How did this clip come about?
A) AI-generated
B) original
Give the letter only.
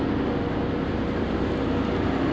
B